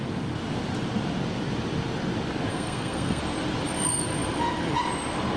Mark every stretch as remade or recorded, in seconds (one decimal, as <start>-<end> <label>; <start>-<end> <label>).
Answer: 0.0-2.5 recorded; 2.5-3.2 remade; 3.2-5.4 recorded